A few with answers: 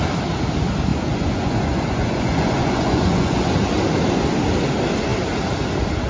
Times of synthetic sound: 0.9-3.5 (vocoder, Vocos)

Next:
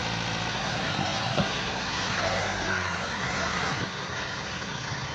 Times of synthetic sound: 0.5-5.1 (codec, SNAC)

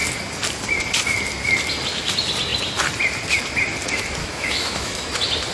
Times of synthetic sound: 4.2-5.1 (autoencoder, DAC-VAE)